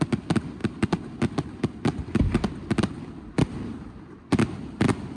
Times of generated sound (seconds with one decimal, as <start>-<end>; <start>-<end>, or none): none